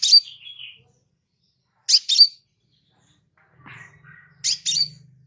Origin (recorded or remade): recorded